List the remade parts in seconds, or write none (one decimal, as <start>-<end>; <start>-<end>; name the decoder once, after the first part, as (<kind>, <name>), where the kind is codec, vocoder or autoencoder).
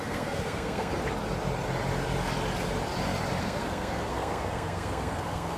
0.0-0.9 (codec, SNAC); 3.4-5.6